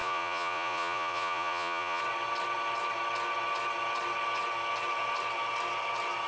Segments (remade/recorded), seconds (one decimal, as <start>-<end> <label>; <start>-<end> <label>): 0.0-2.0 remade; 2.0-6.3 recorded